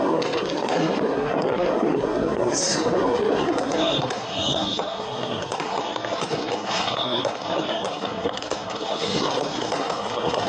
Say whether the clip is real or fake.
fake